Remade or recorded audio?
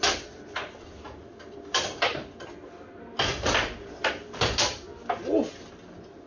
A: recorded